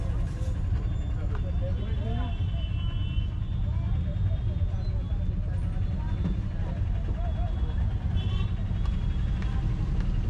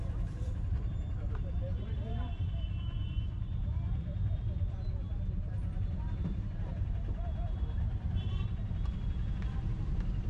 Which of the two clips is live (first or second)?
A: first